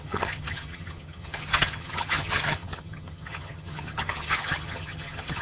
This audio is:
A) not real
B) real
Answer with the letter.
A